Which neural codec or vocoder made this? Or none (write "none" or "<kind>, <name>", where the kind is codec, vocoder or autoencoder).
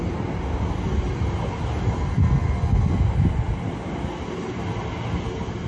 none